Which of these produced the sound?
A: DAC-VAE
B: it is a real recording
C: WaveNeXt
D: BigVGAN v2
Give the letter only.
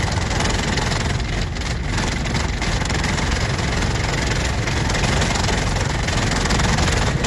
B